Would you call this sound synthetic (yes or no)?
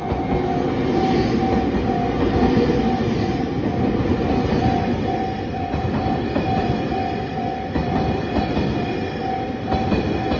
no